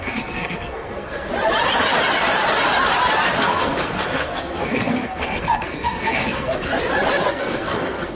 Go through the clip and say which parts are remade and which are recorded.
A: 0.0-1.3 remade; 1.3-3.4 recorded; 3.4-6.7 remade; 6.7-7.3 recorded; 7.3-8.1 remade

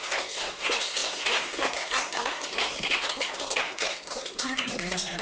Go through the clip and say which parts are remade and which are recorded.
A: 0.0-5.2 remade

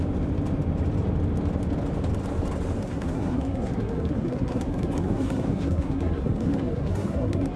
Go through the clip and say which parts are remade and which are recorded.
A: 0.0-2.8 recorded; 2.8-7.6 remade

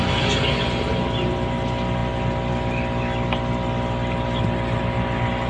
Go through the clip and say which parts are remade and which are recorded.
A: 0.0-5.5 recorded

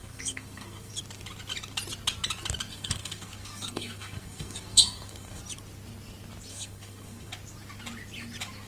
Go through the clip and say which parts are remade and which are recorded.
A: 0.0-0.9 remade; 0.9-2.7 recorded; 2.7-5.4 remade; 5.4-6.5 recorded; 6.5-7.3 remade; 7.3-8.7 recorded

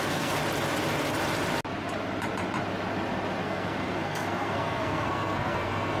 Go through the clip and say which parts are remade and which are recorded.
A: 0.0-0.4 remade; 0.4-3.4 recorded; 3.4-6.0 remade

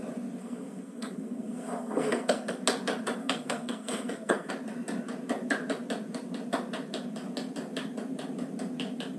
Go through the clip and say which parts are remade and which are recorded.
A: 0.0-0.4 recorded; 0.4-2.6 remade; 2.6-3.2 recorded; 3.2-4.5 remade; 4.5-9.2 recorded

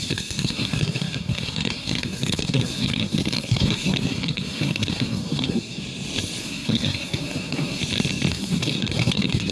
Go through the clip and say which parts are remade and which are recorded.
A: 0.0-5.8 remade; 5.8-6.4 recorded; 6.4-7.8 remade; 7.8-8.3 recorded; 8.3-9.5 remade